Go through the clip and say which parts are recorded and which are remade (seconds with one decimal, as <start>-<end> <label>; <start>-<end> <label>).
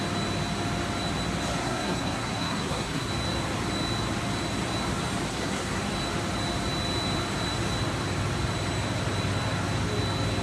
0.0-1.6 recorded; 1.6-3.1 remade; 3.1-5.3 recorded; 5.3-5.8 remade; 5.8-10.4 recorded